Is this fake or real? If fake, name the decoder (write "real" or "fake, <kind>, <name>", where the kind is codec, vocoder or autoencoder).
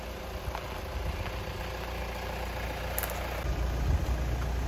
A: real